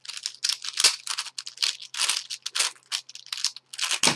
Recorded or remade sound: recorded